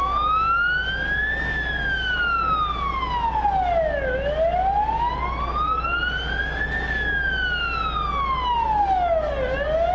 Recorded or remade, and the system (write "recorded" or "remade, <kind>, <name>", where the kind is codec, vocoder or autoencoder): recorded